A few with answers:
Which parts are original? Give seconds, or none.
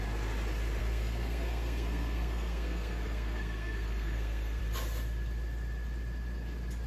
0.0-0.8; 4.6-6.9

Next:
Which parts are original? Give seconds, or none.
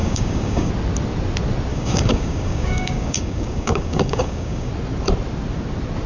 0.7-1.7; 4.7-6.1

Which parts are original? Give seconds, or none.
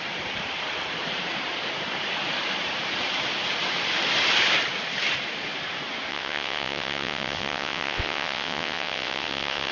0.0-6.1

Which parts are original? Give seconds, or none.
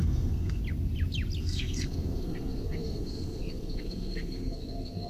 0.6-1.4